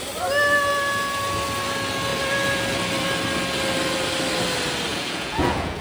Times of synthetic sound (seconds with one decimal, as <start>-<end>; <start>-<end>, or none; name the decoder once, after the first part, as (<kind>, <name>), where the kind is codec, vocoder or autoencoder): 4.9-5.8 (vocoder, Vocos)